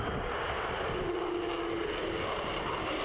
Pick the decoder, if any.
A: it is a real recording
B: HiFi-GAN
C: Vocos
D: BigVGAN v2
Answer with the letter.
A